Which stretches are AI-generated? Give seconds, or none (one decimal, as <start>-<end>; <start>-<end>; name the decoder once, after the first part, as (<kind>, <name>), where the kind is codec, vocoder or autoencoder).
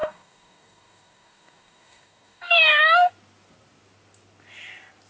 0.0-3.1 (codec, DAC)